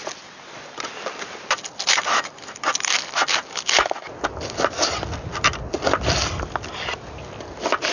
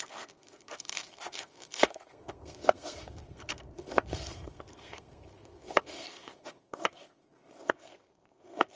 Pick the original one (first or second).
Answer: first